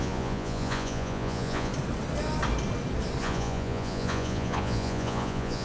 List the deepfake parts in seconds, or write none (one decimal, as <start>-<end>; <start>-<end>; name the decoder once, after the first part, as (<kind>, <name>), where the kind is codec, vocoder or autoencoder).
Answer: 0.0-1.7 (vocoder, Vocos); 3.2-5.6